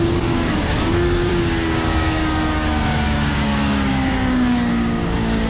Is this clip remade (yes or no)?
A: yes